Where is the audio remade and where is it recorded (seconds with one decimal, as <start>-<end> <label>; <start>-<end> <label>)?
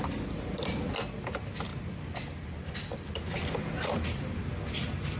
0.0-5.2 recorded